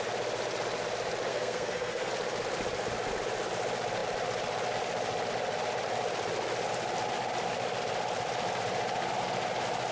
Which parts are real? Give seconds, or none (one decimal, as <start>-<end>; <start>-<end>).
0.0-1.3; 2.1-9.9